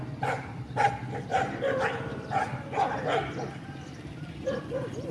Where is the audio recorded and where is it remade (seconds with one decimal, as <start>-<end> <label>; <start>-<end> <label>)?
0.0-5.1 recorded